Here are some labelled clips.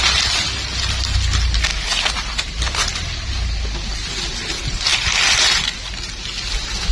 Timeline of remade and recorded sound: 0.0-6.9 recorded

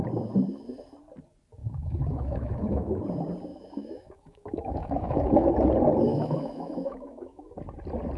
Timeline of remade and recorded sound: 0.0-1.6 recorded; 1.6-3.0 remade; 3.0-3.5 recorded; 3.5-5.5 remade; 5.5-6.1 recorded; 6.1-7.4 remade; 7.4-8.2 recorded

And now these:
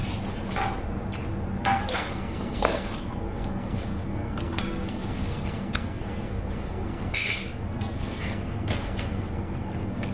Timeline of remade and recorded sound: 0.0-1.6 recorded; 1.6-10.1 remade

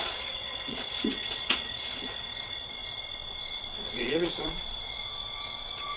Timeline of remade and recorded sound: 0.0-6.0 remade

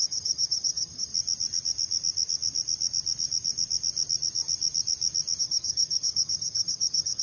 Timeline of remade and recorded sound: 0.0-1.1 remade; 1.1-5.4 recorded; 5.4-7.2 remade

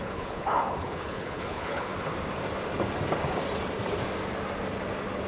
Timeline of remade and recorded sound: 0.0-1.9 remade; 1.9-5.3 recorded

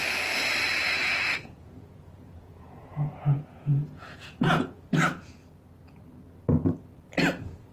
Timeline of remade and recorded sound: 0.0-1.0 recorded; 1.0-4.8 remade; 4.8-7.7 recorded

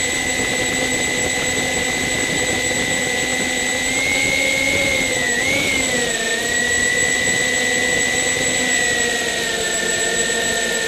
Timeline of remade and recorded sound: 0.0-10.9 recorded